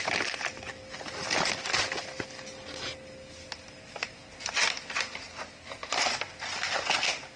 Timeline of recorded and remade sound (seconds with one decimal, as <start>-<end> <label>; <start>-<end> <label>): 0.0-7.4 recorded